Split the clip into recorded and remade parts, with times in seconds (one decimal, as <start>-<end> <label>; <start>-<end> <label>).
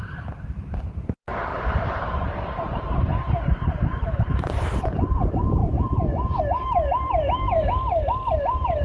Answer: 0.0-5.6 remade; 5.6-6.4 recorded; 6.4-8.8 remade